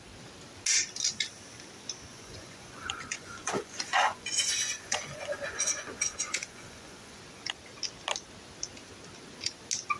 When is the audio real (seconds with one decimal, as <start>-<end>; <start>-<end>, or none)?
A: 0.0-2.1; 7.2-10.0